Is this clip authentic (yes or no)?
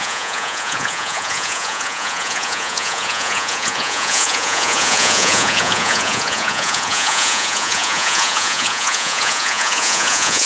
no